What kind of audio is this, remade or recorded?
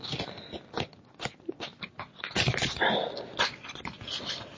recorded